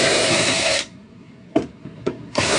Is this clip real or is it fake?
fake